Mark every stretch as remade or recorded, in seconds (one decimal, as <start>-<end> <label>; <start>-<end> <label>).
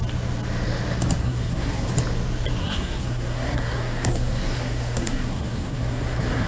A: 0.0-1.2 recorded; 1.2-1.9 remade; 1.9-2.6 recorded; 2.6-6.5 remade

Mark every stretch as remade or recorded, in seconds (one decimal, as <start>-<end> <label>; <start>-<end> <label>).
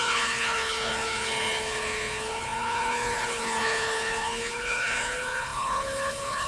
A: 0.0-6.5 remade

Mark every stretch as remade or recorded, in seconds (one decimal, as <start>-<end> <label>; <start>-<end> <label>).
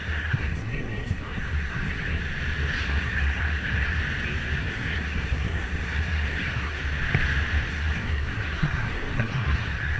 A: 0.0-2.2 remade; 2.2-2.8 recorded; 2.8-4.0 remade; 4.0-4.6 recorded; 4.6-6.8 remade; 6.8-7.7 recorded; 7.7-10.0 remade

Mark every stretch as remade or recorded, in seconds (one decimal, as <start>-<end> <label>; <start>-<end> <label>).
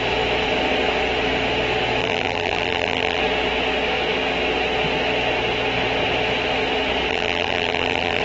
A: 0.0-2.0 recorded; 2.0-3.2 remade; 3.2-7.1 recorded; 7.1-8.2 remade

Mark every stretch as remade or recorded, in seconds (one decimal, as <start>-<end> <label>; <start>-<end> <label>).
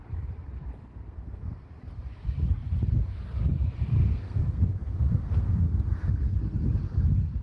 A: 0.0-0.9 recorded; 0.9-1.7 remade; 1.7-4.0 recorded; 4.0-6.0 remade; 6.0-7.4 recorded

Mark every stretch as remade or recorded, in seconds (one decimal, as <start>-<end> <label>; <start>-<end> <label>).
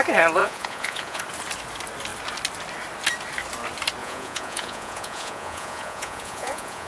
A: 0.0-0.4 recorded; 0.4-1.2 remade; 1.2-4.0 recorded; 4.0-6.9 remade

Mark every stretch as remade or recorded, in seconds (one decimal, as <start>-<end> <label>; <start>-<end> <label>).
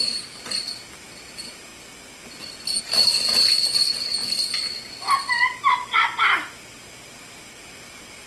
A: 0.0-1.7 remade; 1.7-2.8 recorded; 2.8-4.2 remade; 4.2-7.2 recorded; 7.2-8.3 remade